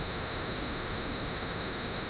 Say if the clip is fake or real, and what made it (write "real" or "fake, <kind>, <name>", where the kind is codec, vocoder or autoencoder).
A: fake, autoencoder, DAC-VAE